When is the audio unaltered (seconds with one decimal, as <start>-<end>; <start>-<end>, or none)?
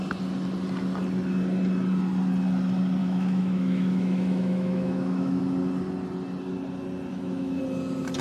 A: 0.0-3.0; 5.4-7.1; 7.6-8.2